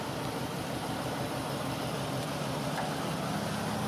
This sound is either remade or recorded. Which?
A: remade